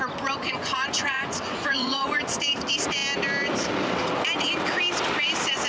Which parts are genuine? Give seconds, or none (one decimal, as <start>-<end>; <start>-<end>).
0.0-0.4; 2.4-5.7